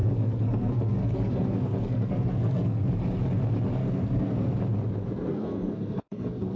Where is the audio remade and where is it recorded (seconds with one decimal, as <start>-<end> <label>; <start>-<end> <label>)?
0.0-2.9 remade; 2.9-3.8 recorded; 3.8-4.5 remade; 4.5-5.3 recorded; 5.3-6.6 remade